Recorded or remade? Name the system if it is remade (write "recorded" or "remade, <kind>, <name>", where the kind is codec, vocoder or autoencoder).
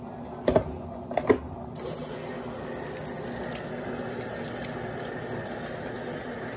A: recorded